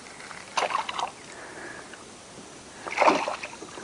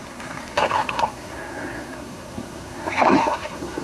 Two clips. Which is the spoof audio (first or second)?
second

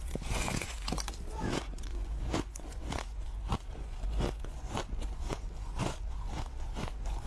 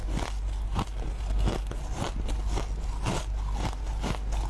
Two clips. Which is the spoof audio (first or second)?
first